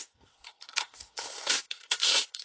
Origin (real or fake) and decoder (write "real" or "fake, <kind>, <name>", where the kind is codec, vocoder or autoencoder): fake, codec, SNAC